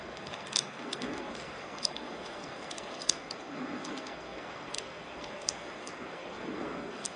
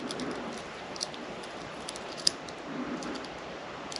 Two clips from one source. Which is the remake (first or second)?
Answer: first